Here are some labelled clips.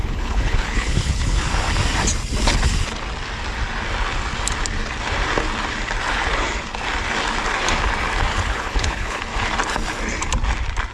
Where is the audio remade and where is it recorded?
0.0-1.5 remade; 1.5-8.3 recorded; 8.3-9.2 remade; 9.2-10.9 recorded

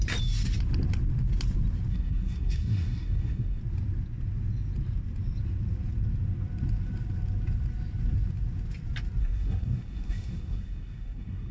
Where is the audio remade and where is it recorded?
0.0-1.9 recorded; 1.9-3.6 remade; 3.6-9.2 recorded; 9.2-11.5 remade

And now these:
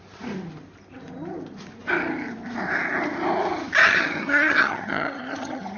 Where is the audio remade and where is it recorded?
0.0-3.8 recorded; 3.8-5.8 remade

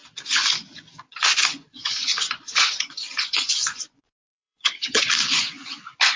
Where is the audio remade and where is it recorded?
0.0-1.5 recorded; 1.5-5.1 remade; 5.1-6.2 recorded